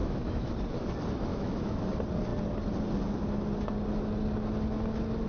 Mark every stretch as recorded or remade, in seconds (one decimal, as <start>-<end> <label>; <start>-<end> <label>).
0.0-0.5 remade; 0.5-1.3 recorded; 1.3-1.9 remade; 1.9-5.3 recorded